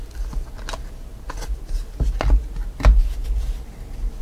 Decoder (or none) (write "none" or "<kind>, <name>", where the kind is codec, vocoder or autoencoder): none